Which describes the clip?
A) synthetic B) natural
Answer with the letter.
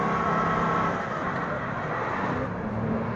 B